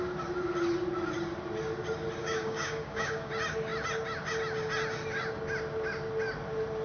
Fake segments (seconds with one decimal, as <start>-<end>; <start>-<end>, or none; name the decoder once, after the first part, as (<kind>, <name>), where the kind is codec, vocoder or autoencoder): 2.2-3.3 (codec, DAC)